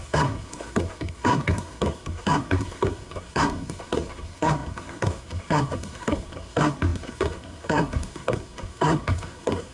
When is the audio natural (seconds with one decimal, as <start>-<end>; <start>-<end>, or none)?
none